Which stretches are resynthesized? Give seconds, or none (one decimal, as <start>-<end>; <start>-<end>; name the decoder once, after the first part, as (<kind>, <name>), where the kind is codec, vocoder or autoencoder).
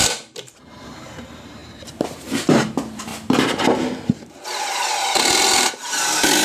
0.0-3.1 (vocoder, BigVGAN v2); 4.6-6.4